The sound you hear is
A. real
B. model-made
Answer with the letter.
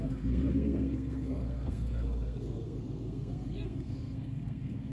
B